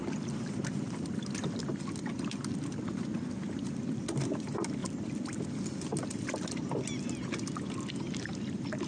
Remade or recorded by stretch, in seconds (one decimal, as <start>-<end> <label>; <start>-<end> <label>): 0.0-1.6 remade; 1.6-4.8 recorded; 4.8-5.4 remade; 5.4-8.9 recorded